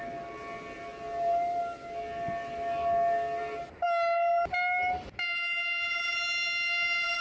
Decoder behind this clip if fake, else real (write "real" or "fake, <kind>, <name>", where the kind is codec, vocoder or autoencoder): real